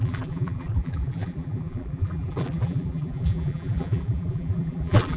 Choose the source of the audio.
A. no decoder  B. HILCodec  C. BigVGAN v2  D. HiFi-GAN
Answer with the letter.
C